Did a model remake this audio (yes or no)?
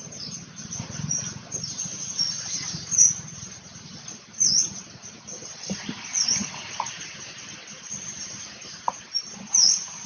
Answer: no